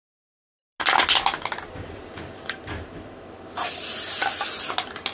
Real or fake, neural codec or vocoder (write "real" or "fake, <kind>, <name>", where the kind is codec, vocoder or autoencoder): real